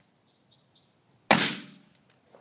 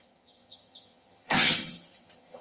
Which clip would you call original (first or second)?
first